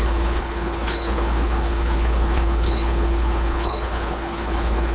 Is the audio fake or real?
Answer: fake